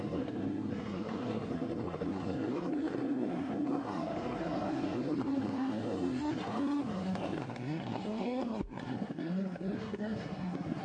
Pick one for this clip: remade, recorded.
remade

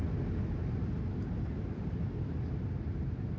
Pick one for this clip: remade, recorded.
recorded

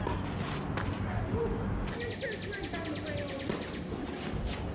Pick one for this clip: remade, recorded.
recorded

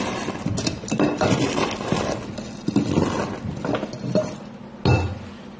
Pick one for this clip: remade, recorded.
recorded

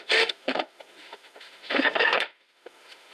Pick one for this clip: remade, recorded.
remade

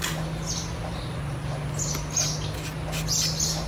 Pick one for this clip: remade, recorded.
recorded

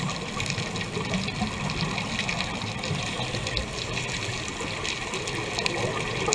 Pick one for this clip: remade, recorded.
recorded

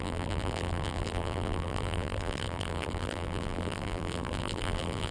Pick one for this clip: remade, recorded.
remade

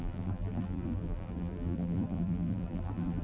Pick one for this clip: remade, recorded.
remade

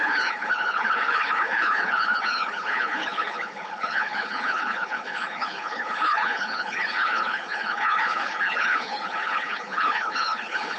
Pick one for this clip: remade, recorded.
remade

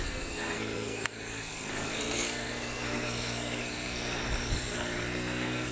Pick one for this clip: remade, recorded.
remade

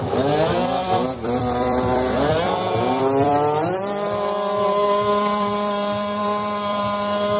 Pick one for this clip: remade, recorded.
remade